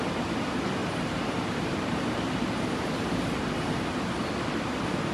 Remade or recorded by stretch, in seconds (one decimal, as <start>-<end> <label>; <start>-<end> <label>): 0.0-0.8 recorded; 0.8-3.9 remade; 3.9-5.1 recorded